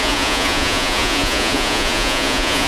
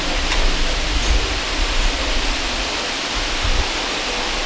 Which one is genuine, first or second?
second